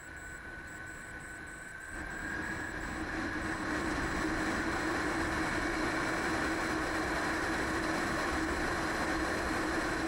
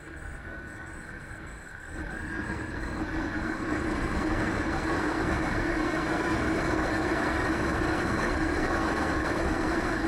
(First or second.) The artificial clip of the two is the second